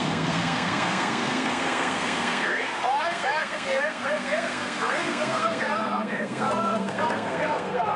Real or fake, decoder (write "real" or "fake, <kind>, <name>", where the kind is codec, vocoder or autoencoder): fake, codec, SNAC